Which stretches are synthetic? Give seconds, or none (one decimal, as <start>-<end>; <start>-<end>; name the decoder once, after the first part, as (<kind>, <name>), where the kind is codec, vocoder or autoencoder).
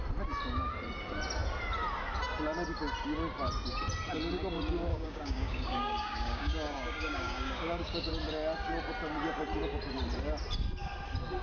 4.9-8.1 (codec, DAC)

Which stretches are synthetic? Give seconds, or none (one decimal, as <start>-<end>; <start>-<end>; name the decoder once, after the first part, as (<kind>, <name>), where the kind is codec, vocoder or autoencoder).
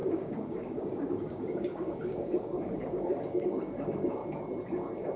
0.0-4.2 (codec, DAC)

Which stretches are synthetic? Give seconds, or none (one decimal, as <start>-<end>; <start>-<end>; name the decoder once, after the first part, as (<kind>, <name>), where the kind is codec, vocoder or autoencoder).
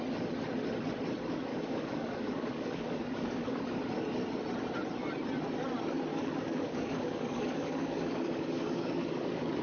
1.5-3.6 (codec, DAC); 6.1-9.6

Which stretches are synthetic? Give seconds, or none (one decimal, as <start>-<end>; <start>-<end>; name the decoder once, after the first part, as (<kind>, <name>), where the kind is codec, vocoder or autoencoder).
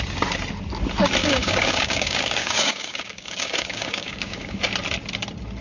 1.2-4.6 (codec, DAC)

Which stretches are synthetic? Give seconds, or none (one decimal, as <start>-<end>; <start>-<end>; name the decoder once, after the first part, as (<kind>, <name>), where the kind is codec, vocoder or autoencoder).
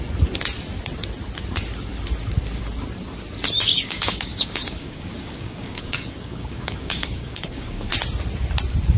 3.7-7.9 (codec, DAC)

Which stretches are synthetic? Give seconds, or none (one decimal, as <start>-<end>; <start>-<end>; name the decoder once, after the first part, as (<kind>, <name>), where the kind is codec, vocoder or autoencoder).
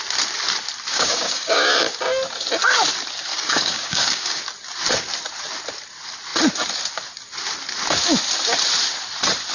0.9-1.7 (codec, DAC); 3.3-4.4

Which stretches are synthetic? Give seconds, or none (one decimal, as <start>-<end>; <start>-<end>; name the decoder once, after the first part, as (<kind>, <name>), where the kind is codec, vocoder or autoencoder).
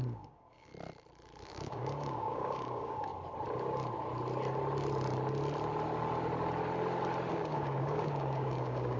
0.0-0.7 (codec, DAC); 1.4-3.1; 7.3-9.0